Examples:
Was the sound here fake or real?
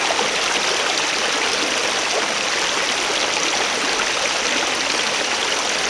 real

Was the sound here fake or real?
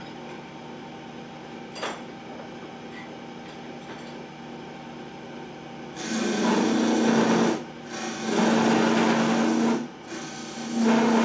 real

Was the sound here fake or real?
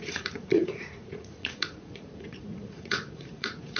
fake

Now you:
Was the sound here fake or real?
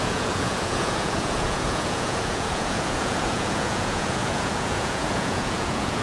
fake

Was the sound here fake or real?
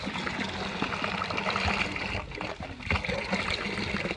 real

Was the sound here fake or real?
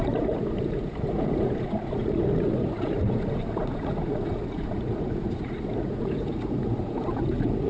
fake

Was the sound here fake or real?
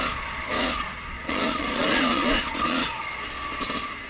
fake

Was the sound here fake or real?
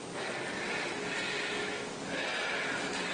real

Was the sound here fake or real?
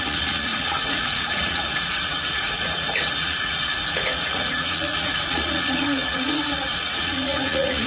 fake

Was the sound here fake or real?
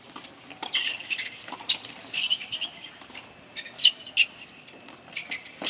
real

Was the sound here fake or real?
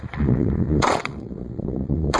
fake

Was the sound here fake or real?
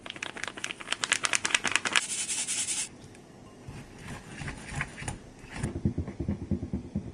real